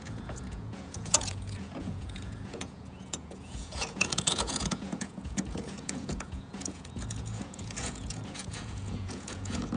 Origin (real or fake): fake